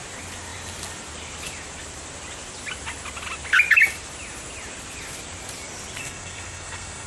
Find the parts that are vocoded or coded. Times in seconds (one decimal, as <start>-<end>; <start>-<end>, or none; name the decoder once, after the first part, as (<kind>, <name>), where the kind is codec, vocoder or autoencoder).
6.0-7.1 (codec, SNAC)